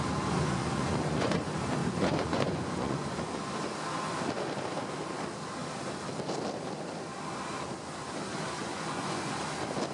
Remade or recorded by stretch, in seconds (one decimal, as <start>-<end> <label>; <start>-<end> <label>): 0.0-0.6 recorded; 0.6-1.4 remade; 1.4-1.8 recorded; 1.8-3.4 remade; 3.4-8.6 recorded; 8.6-9.4 remade; 9.4-9.9 recorded